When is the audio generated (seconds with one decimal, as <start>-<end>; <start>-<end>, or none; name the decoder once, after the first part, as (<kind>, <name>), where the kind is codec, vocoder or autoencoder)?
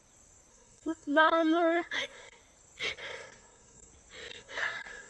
0.5-2.4 (codec, SNAC); 3.0-3.9; 4.3-5.1